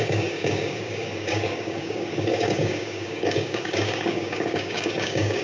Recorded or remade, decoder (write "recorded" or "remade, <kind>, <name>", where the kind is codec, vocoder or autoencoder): remade, codec, DAC